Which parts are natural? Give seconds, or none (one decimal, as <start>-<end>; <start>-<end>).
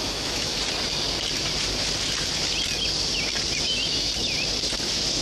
0.5-3.6; 4.1-5.2